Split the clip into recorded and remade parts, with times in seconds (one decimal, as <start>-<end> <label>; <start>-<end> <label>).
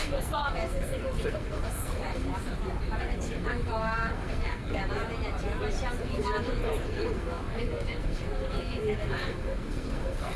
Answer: 0.0-2.3 remade; 2.3-3.0 recorded; 3.0-4.8 remade; 4.8-6.0 recorded; 6.0-10.4 remade